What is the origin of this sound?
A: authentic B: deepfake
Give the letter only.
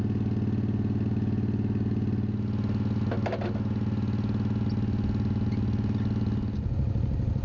A